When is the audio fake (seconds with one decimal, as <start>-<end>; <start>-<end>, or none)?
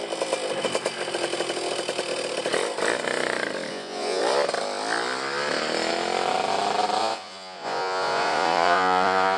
3.7-4.2; 7.0-9.4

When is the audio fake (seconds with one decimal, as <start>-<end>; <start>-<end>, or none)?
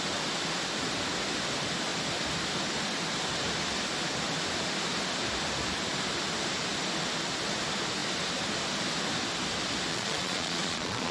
9.9-11.1